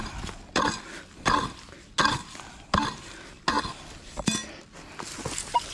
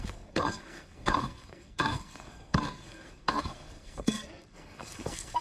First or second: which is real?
first